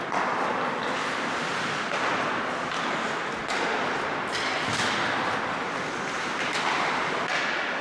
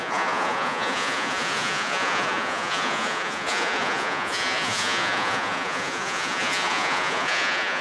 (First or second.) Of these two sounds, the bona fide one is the first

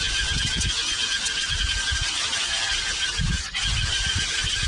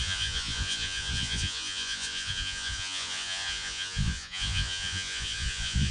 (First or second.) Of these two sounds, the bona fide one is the first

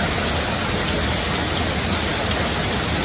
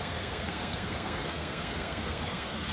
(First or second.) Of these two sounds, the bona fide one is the first